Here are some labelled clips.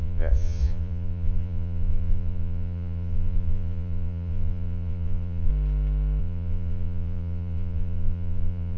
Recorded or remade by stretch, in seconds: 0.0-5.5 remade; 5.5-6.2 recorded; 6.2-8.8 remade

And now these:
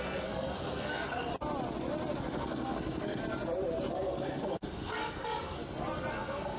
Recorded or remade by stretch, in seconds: 0.0-1.3 remade; 1.3-2.2 recorded; 2.2-3.2 remade; 3.2-3.9 recorded; 3.9-5.6 remade; 5.6-6.1 recorded; 6.1-6.6 remade

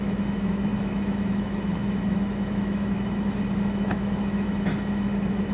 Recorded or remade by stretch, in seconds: 0.0-5.5 remade

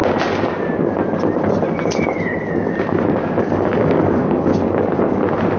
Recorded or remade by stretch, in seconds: 0.0-3.4 recorded; 3.4-4.5 remade; 4.5-5.6 recorded